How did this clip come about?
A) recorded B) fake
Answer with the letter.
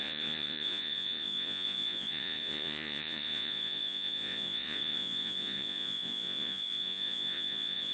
B